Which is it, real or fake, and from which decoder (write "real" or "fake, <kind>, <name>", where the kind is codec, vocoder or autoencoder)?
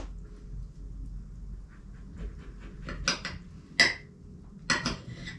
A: real